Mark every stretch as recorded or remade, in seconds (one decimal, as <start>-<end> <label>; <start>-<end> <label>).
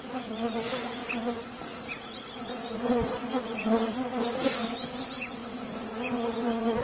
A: 0.0-1.0 remade; 1.0-1.8 recorded; 1.8-4.6 remade; 4.6-5.1 recorded; 5.1-6.8 remade